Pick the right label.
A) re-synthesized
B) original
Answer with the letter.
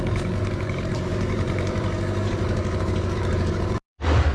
A